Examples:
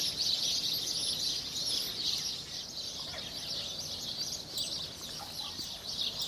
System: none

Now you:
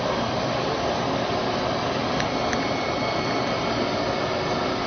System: none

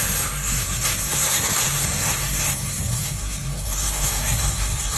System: codec, SNAC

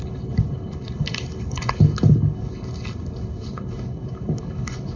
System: codec, HILCodec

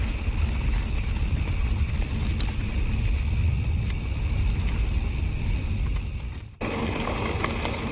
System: none